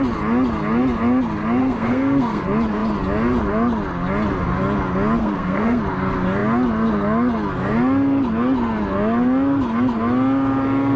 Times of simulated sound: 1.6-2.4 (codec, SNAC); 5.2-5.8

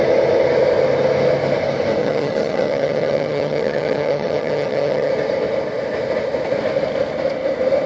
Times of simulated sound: 2.0-5.1 (vocoder, HiFi-GAN)

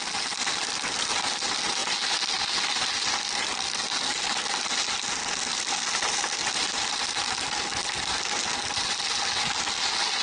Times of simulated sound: none

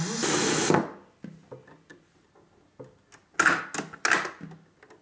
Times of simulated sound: none

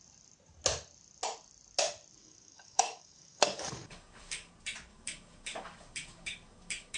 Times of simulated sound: 2.2-4.5 (codec, DAC); 4.9-7.0

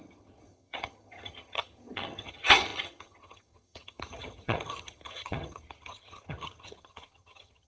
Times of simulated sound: 0.0-7.7 (vocoder, HiFi-GAN)